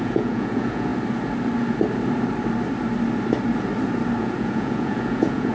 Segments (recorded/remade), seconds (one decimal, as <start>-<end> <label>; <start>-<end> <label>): 0.0-0.9 remade; 0.9-4.2 recorded; 4.2-5.5 remade